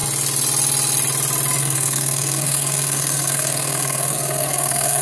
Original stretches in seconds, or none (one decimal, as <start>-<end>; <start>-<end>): 0.0-1.6